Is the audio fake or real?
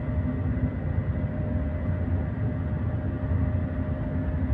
real